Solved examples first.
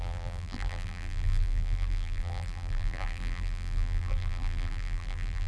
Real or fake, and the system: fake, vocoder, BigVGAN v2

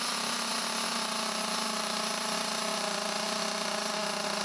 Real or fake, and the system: real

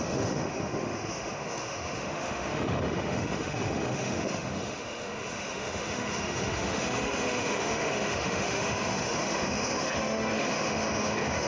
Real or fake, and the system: fake, autoencoder, DAC-VAE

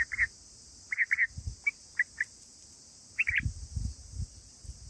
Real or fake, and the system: real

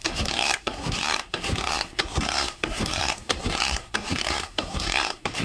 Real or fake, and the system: fake, codec, SNAC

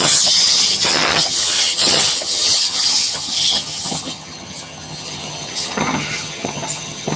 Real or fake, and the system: fake, vocoder, HiFi-GAN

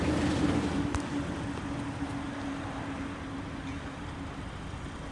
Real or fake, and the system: real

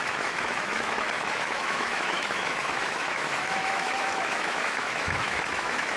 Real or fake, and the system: fake, autoencoder, DAC-VAE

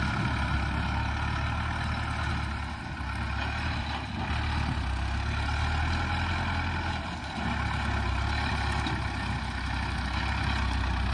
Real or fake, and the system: real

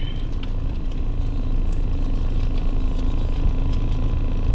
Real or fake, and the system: real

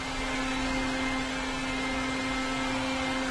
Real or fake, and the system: real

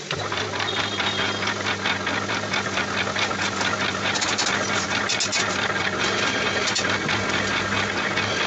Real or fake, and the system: real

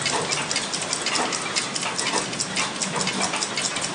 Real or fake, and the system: real